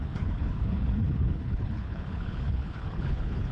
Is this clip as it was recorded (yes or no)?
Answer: no